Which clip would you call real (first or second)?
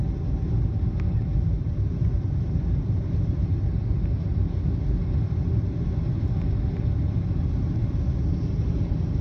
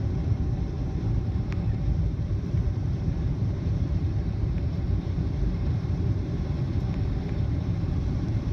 first